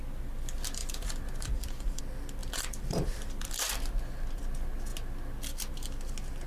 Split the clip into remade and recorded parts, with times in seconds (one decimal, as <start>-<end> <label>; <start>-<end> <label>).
0.0-0.8 recorded; 0.8-2.0 remade; 2.0-2.4 recorded; 2.4-3.8 remade; 3.8-6.5 recorded